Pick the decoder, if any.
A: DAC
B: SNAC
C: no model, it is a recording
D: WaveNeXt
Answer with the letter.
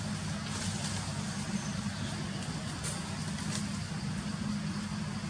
C